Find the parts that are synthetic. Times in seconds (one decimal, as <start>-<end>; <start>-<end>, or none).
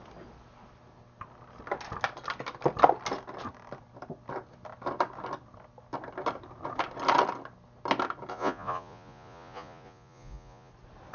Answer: 8.3-10.7